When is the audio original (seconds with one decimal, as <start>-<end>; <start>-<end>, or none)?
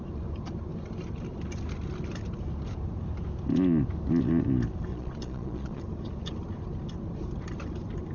0.0-4.9; 5.8-8.1